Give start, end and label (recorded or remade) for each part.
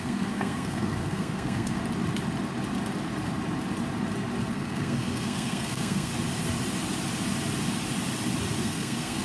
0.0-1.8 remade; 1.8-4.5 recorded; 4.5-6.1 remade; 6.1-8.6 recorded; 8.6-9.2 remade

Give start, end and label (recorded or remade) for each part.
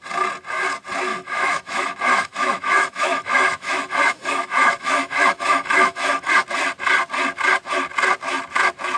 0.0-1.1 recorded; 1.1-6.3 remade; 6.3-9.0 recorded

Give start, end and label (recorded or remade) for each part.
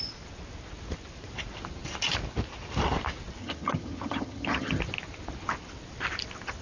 0.0-3.4 recorded; 3.4-4.8 remade; 4.8-6.6 recorded